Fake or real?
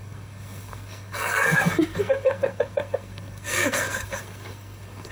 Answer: fake